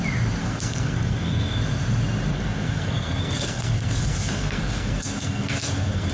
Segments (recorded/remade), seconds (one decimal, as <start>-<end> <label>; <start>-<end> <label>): 0.0-0.4 recorded; 0.4-1.6 remade; 1.6-2.3 recorded; 2.3-6.1 remade